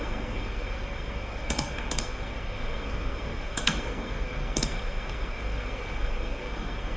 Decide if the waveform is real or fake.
fake